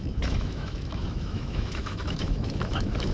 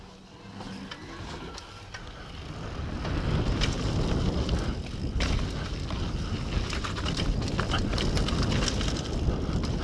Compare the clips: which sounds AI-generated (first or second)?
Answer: first